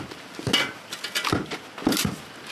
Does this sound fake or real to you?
real